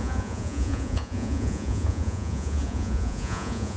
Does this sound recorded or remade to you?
remade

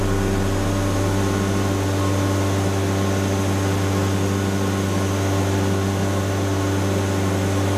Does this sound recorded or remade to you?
recorded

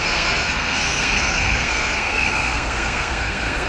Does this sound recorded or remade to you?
remade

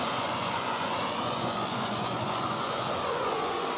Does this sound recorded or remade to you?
remade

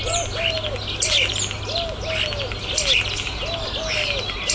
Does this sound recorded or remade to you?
recorded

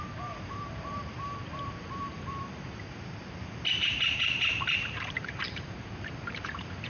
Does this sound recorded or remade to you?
remade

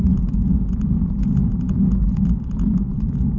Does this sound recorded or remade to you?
remade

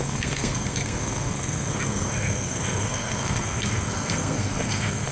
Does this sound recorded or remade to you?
remade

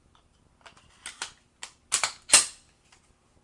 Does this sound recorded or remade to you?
recorded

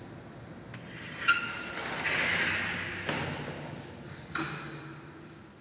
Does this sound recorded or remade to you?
recorded